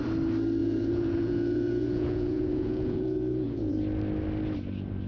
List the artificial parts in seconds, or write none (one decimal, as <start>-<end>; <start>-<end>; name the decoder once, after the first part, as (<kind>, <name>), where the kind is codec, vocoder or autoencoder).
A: 0.6-3.7 (vocoder, Vocos)